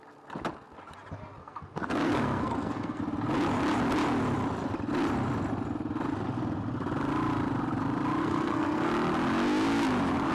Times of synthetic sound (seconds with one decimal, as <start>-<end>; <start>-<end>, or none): 1.4-3.0; 8.2-8.9